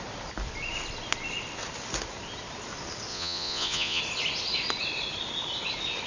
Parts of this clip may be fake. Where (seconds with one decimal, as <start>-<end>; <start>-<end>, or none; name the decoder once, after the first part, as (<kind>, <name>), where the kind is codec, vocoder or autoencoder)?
3.1-4.0 (vocoder, Vocos)